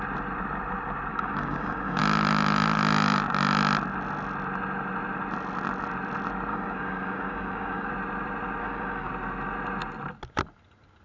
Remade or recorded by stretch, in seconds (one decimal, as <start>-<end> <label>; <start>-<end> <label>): 0.0-1.1 recorded; 1.1-2.0 remade; 2.0-6.5 recorded; 6.5-7.9 remade; 7.9-8.6 recorded; 8.6-9.1 remade; 9.1-11.0 recorded